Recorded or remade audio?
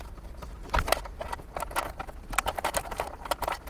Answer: recorded